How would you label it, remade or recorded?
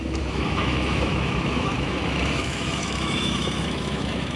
remade